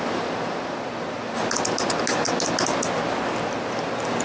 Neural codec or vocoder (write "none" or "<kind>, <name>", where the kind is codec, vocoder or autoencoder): none